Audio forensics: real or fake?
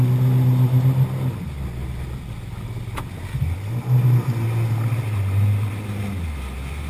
real